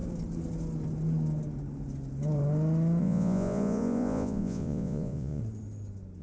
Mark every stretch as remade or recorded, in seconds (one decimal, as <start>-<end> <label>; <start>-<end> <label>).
0.0-3.0 recorded; 3.0-5.4 remade; 5.4-6.2 recorded